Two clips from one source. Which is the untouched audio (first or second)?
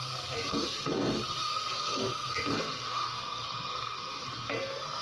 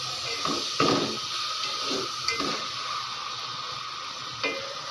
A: second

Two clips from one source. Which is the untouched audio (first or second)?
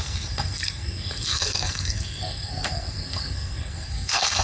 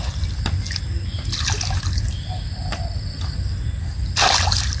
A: second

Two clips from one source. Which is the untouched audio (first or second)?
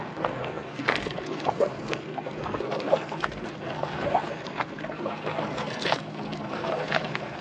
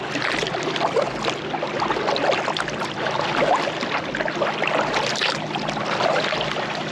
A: second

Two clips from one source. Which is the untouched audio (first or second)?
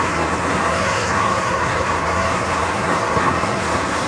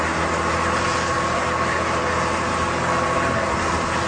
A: second